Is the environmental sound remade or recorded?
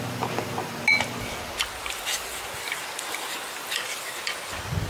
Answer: recorded